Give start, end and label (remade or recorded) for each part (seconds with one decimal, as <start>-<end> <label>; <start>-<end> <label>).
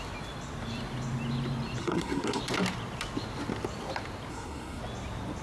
0.0-1.8 recorded; 1.8-2.4 remade; 2.4-4.3 recorded; 4.3-4.8 remade; 4.8-5.4 recorded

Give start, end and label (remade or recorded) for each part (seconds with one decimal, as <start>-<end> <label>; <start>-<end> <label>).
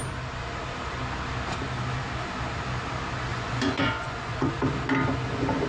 0.0-3.3 recorded; 3.3-4.5 remade; 4.5-5.7 recorded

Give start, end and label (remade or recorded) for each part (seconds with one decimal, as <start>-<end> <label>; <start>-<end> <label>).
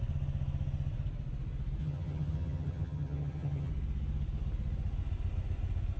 0.0-1.8 recorded; 1.8-3.7 remade; 3.7-6.0 recorded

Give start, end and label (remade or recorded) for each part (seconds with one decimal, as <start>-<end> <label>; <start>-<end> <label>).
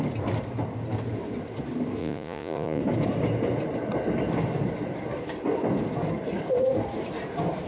0.0-2.0 recorded; 2.0-2.8 remade; 2.8-7.7 recorded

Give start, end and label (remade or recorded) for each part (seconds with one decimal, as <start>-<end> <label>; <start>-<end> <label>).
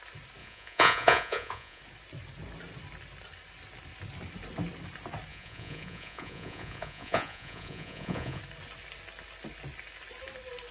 0.0-0.4 recorded; 0.4-1.8 remade; 1.8-5.3 recorded; 5.3-8.4 remade; 8.4-10.7 recorded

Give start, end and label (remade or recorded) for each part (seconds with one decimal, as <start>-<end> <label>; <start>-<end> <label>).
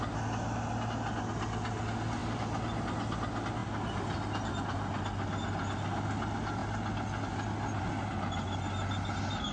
0.0-2.2 recorded; 2.2-2.8 remade; 2.8-9.5 recorded